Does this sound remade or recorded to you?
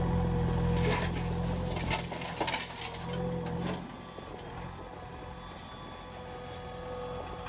recorded